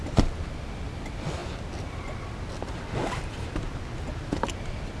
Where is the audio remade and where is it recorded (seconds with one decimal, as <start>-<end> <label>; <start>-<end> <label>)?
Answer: 0.0-5.0 recorded